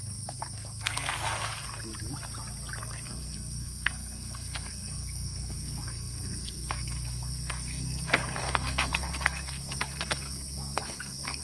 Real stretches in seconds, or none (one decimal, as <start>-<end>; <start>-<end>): 1.9-2.8